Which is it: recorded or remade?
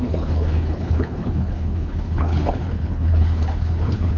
remade